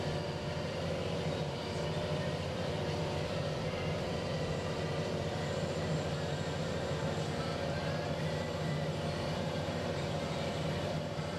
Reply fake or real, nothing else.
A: fake